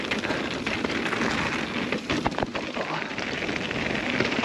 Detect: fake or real real